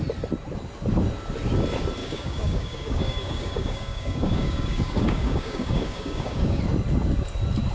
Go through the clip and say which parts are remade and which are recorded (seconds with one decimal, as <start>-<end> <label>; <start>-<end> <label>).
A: 0.0-2.0 recorded; 2.0-6.6 remade; 6.6-7.7 recorded